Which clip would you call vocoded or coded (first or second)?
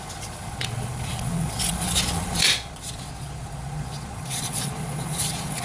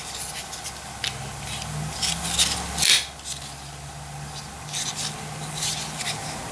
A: first